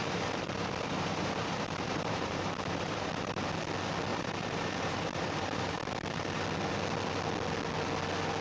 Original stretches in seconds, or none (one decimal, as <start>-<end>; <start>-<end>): 3.4-4.1; 6.4-8.4